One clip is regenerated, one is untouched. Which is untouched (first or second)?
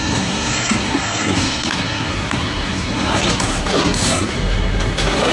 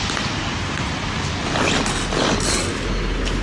second